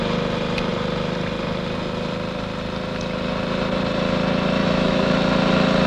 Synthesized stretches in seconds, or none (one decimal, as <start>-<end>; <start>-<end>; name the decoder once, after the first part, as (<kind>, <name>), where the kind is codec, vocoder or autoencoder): 4.6-5.1 (autoencoder, DAC-VAE)